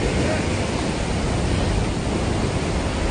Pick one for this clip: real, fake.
real